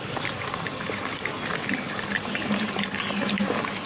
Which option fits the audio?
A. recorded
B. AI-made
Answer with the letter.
A